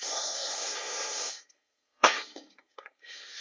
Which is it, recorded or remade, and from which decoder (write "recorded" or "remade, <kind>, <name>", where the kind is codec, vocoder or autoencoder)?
remade, codec, SNAC